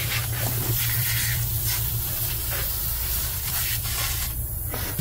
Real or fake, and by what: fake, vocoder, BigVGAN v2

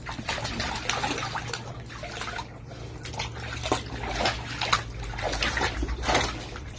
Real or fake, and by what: real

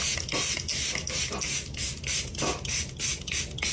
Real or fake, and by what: real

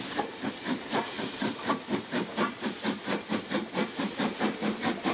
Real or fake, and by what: fake, vocoder, BigVGAN v2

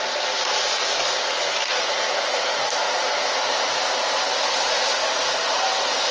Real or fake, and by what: real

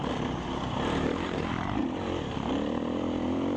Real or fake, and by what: fake, vocoder, BigVGAN v2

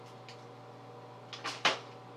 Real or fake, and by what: real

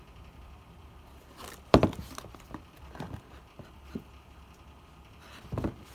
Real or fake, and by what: fake, vocoder, BigVGAN v2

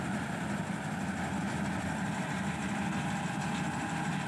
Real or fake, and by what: real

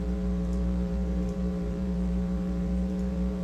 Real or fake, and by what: fake, vocoder, BigVGAN v2